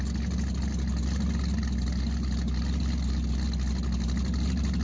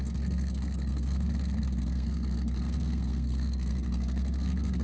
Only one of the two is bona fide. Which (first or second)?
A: first